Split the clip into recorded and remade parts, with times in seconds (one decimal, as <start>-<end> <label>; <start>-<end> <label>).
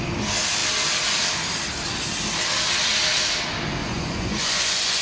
0.0-3.8 recorded; 3.8-5.0 remade